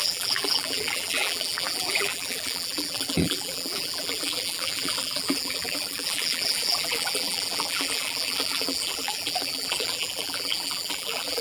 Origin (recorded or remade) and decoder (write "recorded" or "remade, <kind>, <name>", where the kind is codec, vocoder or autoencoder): remade, vocoder, BigVGAN v2